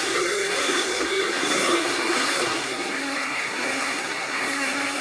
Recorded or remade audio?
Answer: remade